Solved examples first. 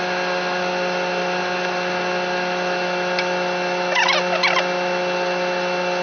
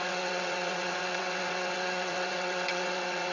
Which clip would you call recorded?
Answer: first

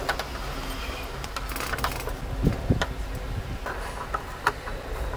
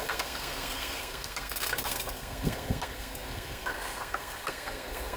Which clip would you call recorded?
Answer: first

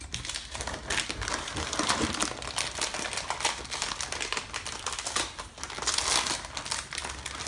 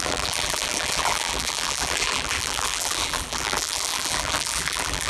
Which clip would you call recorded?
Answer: first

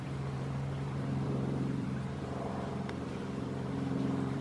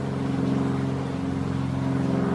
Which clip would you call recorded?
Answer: second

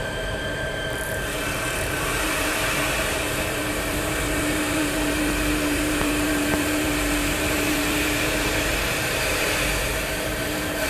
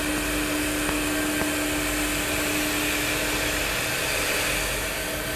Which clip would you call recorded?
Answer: second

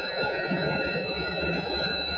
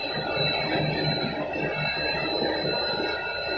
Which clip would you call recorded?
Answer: second